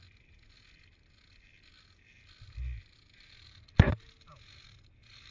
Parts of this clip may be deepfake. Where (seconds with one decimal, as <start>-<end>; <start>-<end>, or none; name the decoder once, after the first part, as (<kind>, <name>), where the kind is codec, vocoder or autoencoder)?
none